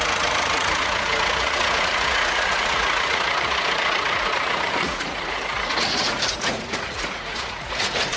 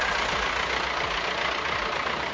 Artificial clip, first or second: first